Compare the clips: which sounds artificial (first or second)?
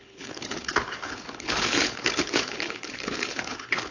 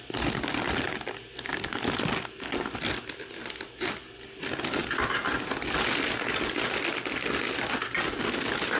first